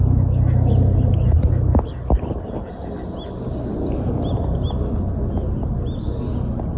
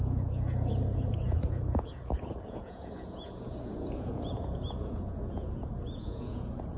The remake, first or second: second